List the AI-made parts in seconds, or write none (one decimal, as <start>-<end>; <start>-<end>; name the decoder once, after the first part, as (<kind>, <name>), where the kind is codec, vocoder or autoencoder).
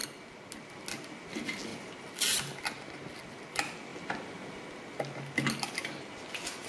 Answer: none